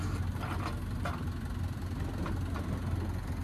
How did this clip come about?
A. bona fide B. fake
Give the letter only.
A